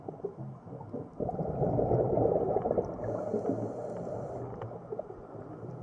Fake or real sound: real